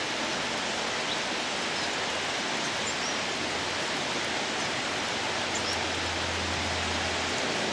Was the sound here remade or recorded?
recorded